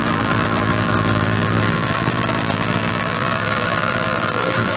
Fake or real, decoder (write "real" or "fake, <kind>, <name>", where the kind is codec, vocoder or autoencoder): fake, vocoder, BigVGAN v2